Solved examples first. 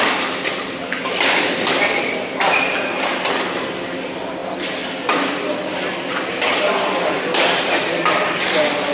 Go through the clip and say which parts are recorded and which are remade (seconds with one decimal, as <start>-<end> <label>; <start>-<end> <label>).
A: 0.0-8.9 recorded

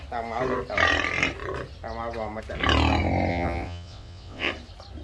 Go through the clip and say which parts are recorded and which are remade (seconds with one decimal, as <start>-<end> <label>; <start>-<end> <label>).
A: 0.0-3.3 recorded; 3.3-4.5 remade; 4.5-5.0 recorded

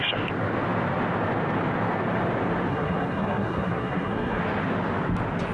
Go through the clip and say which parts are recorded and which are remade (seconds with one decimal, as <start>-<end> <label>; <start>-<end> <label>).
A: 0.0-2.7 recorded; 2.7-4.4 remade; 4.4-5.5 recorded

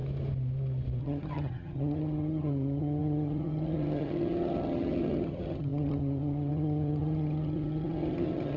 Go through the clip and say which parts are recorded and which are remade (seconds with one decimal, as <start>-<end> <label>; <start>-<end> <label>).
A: 0.0-1.0 recorded; 1.0-8.6 remade